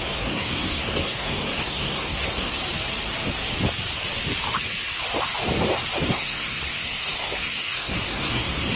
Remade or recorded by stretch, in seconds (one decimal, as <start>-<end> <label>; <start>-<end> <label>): 0.0-2.6 remade; 2.6-6.1 recorded; 6.1-8.8 remade